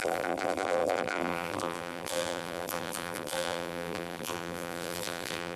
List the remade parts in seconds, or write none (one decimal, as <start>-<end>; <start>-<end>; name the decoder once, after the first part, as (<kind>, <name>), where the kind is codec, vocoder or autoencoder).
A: 0.0-5.6 (vocoder, BigVGAN v2)